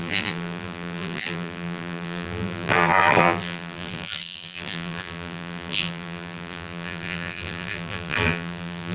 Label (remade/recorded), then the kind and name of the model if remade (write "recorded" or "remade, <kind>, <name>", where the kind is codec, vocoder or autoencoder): remade, vocoder, BigVGAN v2